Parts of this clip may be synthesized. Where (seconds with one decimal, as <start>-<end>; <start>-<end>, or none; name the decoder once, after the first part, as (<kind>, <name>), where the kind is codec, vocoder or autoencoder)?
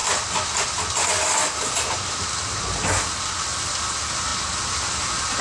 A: 3.2-4.3 (vocoder, BigVGAN v2); 5.0-5.4